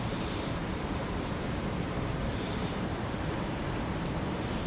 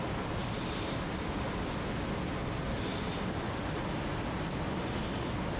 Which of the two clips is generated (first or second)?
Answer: first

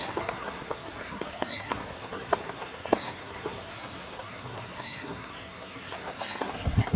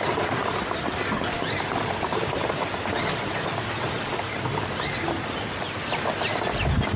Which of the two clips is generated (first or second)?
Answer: first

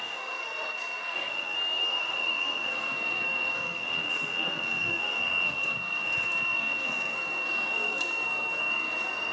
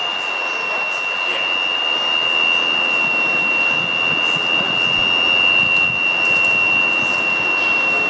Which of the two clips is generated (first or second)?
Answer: first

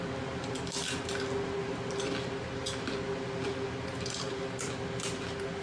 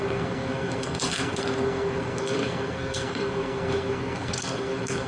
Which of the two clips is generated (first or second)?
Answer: second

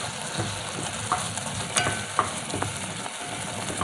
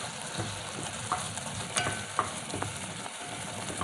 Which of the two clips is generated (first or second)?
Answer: second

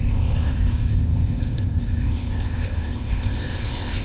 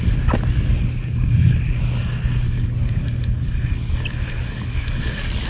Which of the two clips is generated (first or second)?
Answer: first